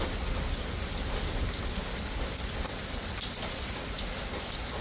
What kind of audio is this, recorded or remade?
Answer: recorded